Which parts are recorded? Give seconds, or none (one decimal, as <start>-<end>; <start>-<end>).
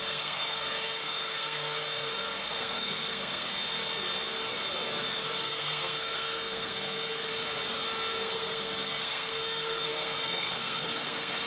3.5-5.4; 7.3-8.1